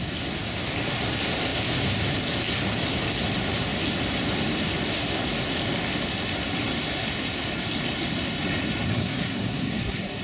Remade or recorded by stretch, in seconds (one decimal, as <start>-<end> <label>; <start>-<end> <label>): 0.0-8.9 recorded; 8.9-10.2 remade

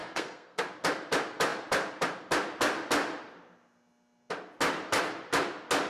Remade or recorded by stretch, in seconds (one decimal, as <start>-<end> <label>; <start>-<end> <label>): 0.0-0.6 remade; 0.6-5.9 recorded

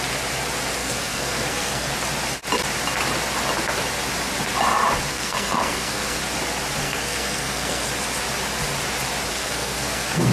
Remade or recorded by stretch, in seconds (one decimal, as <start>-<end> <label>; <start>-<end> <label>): 0.0-0.8 recorded; 0.8-1.9 remade; 1.9-5.1 recorded; 5.1-6.2 remade; 6.2-6.8 recorded; 6.8-7.9 remade; 7.9-9.3 recorded; 9.3-10.3 remade

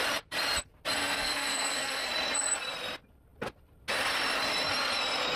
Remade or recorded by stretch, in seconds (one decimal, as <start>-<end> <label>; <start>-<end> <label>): 0.0-1.0 recorded; 1.0-2.1 remade; 2.1-5.4 recorded

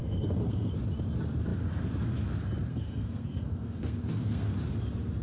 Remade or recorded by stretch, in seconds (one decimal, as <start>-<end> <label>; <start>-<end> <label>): 0.0-0.7 remade; 0.7-2.7 recorded; 2.7-4.5 remade; 4.5-5.2 recorded